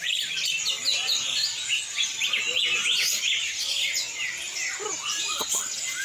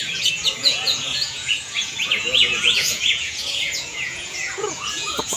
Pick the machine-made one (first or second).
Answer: second